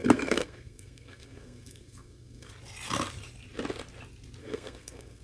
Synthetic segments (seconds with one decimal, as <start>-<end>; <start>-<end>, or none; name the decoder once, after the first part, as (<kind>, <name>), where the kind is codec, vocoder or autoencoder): 0.0-2.5 (codec, SNAC); 4.4-5.2